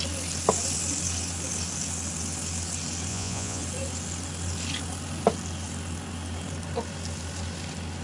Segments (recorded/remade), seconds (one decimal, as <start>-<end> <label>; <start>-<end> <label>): 0.0-3.1 recorded; 3.1-3.6 remade; 3.6-8.0 recorded